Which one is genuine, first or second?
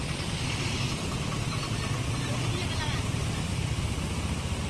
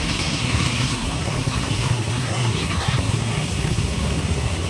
first